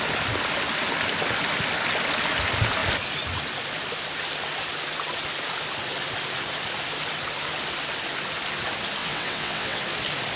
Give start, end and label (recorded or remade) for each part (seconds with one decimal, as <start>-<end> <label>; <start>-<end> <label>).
0.0-9.0 recorded; 9.0-9.8 remade; 9.8-10.4 recorded